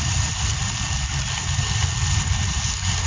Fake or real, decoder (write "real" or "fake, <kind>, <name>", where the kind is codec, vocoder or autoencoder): real